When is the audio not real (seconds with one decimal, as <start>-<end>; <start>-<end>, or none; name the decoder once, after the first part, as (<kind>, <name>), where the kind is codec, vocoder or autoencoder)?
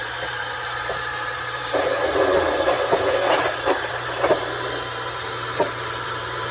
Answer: 0.0-6.5 (vocoder, BigVGAN v2)